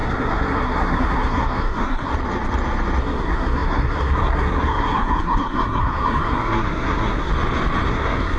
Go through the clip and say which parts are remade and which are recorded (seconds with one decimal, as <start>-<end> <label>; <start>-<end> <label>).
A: 0.0-2.1 remade; 2.1-3.0 recorded; 3.0-7.3 remade; 7.3-7.9 recorded; 7.9-8.4 remade